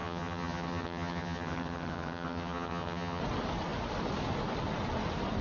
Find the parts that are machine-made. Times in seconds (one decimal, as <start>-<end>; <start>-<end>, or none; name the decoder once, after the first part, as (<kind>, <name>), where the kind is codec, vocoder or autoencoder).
0.0-3.2 (vocoder, HiFi-GAN)